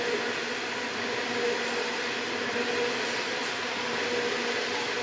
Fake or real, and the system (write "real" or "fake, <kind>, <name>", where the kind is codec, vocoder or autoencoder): real